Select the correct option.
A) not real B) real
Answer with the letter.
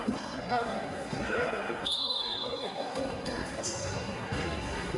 A